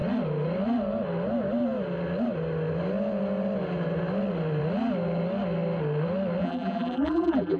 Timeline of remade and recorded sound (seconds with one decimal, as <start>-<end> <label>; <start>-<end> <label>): 0.0-6.4 recorded; 6.4-7.6 remade